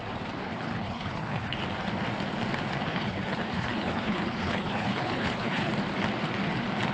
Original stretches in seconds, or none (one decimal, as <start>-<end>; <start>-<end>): 0.0-0.4; 1.6-2.9; 5.7-6.9